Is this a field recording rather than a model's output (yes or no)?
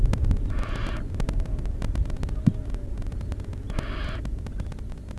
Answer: yes